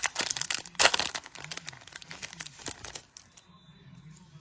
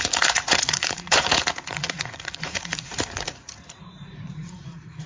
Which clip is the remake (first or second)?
second